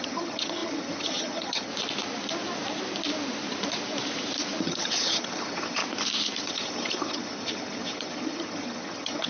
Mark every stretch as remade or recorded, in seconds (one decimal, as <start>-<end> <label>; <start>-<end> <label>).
0.0-1.7 remade; 1.7-4.6 recorded; 4.6-5.8 remade; 5.8-6.4 recorded; 6.4-9.3 remade

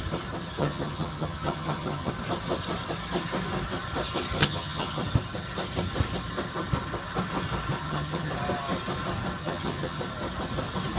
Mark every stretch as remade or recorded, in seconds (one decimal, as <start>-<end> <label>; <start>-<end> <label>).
0.0-0.6 recorded; 0.6-2.1 remade; 2.1-4.4 recorded; 4.4-5.0 remade; 5.0-7.8 recorded; 7.8-8.3 remade; 8.3-9.4 recorded; 9.4-10.0 remade; 10.0-11.0 recorded

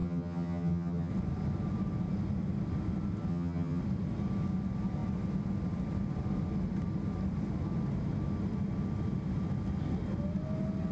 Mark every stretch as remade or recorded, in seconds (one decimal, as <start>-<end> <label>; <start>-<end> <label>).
0.0-1.1 remade; 1.1-3.3 recorded; 3.3-3.8 remade; 3.8-10.9 recorded

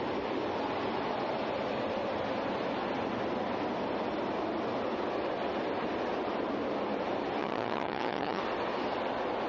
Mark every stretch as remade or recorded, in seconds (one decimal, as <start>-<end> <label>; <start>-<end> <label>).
0.0-7.4 recorded; 7.4-8.4 remade; 8.4-9.5 recorded

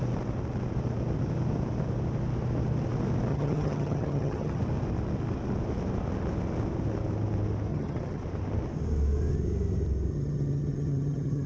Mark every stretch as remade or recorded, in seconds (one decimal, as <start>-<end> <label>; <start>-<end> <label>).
0.0-3.3 recorded; 3.3-4.6 remade; 4.6-7.7 recorded; 7.7-8.2 remade; 8.2-10.1 recorded; 10.1-11.5 remade

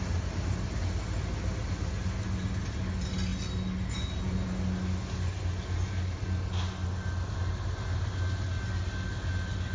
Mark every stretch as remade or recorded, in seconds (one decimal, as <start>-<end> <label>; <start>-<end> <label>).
0.0-9.7 recorded

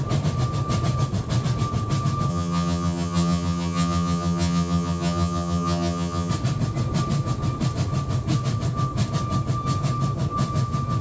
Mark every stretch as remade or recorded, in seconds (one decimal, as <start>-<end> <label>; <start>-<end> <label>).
0.0-2.3 recorded; 2.3-6.3 remade; 6.3-11.0 recorded